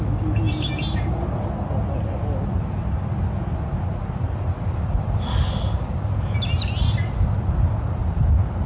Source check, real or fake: real